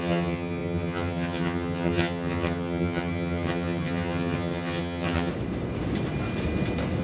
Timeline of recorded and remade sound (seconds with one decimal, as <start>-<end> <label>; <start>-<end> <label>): 0.0-5.3 remade; 5.3-7.0 recorded

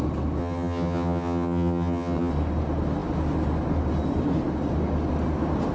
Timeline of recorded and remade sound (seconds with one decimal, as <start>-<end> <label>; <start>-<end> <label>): 0.0-0.4 recorded; 0.4-2.3 remade; 2.3-5.7 recorded

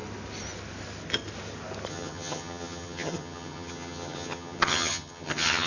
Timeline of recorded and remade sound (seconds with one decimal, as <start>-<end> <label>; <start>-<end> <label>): 0.0-1.9 recorded; 1.9-5.7 remade

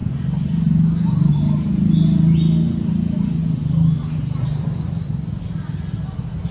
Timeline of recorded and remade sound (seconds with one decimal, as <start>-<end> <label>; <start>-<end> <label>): 0.0-6.5 recorded

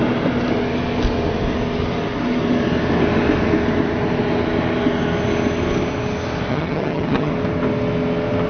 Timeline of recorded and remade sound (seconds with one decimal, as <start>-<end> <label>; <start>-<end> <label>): 0.0-6.5 recorded; 6.5-7.3 remade; 7.3-8.5 recorded

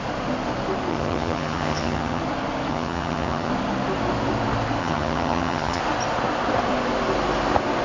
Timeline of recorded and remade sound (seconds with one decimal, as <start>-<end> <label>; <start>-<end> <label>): 0.0-0.9 recorded; 0.9-2.2 remade; 2.2-2.7 recorded; 2.7-3.5 remade; 3.5-4.8 recorded; 4.8-5.8 remade; 5.8-7.8 recorded

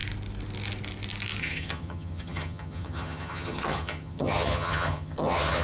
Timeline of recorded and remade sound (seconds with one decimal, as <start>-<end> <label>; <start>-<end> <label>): 0.0-1.4 recorded; 1.4-5.6 remade

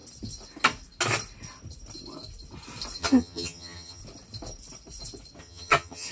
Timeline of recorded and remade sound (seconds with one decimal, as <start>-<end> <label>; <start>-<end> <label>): 0.0-3.0 recorded; 3.0-4.0 remade; 4.0-5.4 recorded; 5.4-6.1 remade